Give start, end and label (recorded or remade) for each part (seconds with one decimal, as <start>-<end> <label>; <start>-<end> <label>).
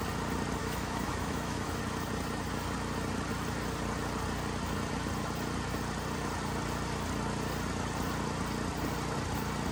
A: 0.0-0.6 recorded; 0.6-1.8 remade; 1.8-9.7 recorded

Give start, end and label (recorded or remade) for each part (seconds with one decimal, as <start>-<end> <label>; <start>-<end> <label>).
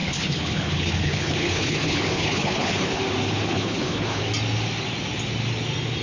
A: 0.0-3.0 remade; 3.0-3.5 recorded; 3.5-4.2 remade; 4.2-6.0 recorded